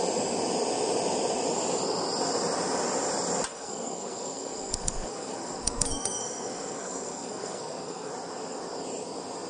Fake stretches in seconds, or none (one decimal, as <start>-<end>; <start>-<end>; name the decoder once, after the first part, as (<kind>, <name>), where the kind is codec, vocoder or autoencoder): 3.5-8.1 (codec, SNAC)